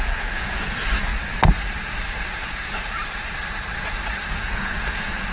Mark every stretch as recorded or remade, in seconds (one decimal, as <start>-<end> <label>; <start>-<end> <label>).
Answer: 0.0-1.1 remade; 1.1-4.3 recorded; 4.3-5.3 remade